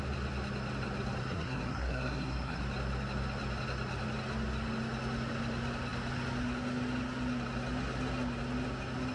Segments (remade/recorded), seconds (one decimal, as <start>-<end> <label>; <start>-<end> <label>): 0.0-1.2 recorded; 1.2-2.6 remade; 2.6-9.1 recorded